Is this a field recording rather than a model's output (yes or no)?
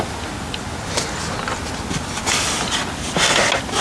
yes